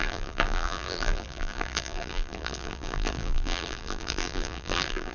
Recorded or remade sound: remade